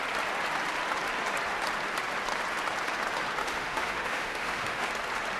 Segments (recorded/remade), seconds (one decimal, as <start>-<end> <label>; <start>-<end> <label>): 0.0-3.4 recorded; 3.4-4.9 remade; 4.9-5.4 recorded